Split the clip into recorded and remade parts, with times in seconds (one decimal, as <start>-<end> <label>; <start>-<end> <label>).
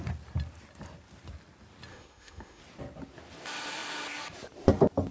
0.0-1.9 recorded; 1.9-2.6 remade; 2.6-5.1 recorded